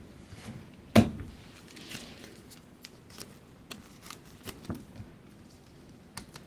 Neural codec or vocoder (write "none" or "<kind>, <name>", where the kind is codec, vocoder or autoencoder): none